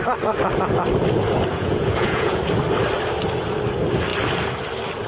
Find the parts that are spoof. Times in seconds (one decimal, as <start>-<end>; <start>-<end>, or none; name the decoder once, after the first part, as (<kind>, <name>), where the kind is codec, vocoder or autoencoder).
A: 1.5-2.4 (vocoder, Vocos)